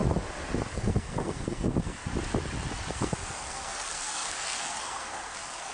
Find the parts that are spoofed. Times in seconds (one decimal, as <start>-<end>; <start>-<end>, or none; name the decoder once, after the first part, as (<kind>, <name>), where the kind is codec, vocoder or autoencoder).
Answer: 0.7-2.0 (codec, SNAC); 2.9-5.7